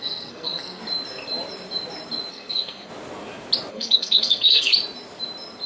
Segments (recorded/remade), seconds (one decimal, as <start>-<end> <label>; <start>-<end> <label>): 0.0-0.8 remade; 0.8-2.3 recorded; 2.3-2.9 remade; 2.9-3.7 recorded; 3.7-4.7 remade; 4.7-5.7 recorded